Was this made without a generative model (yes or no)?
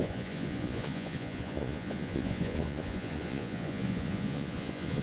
no